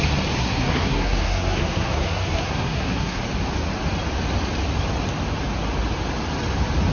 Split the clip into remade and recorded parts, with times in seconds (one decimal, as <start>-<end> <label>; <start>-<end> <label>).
0.0-0.4 recorded; 0.4-3.2 remade; 3.2-6.9 recorded